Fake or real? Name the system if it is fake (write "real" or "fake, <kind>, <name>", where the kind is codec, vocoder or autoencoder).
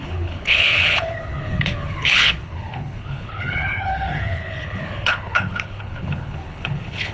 fake, codec, HILCodec